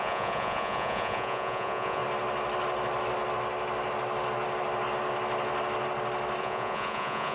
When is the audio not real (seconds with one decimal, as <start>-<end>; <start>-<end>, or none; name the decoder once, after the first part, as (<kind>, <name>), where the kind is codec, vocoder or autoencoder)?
0.0-2.0 (vocoder, Vocos); 6.4-7.3